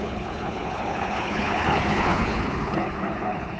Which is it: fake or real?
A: fake